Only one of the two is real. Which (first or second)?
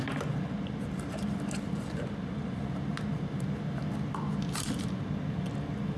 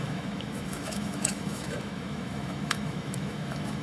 first